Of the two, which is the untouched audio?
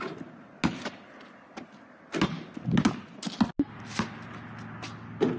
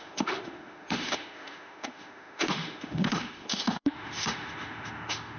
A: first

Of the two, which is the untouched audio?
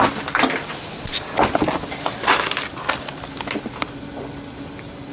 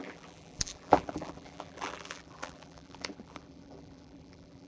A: first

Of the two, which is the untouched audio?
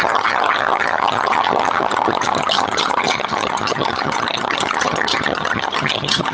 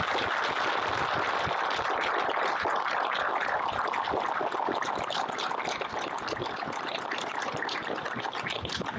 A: second